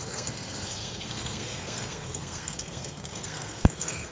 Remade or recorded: remade